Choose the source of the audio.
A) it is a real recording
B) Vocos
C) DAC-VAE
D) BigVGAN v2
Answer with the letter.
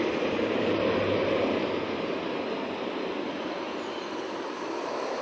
A